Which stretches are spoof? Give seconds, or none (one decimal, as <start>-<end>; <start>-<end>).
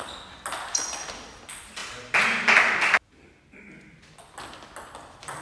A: none